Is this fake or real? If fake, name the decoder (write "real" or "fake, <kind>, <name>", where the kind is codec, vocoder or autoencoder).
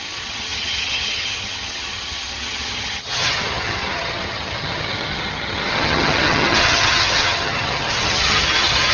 fake, vocoder, HiFi-GAN